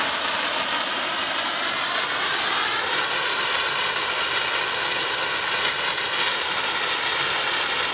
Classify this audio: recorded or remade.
recorded